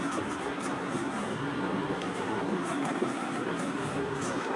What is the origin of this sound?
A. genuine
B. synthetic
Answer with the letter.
B